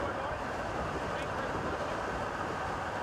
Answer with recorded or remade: recorded